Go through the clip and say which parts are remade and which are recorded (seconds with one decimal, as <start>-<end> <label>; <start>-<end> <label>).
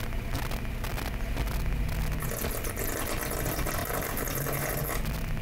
0.0-3.8 recorded; 3.8-4.8 remade; 4.8-5.4 recorded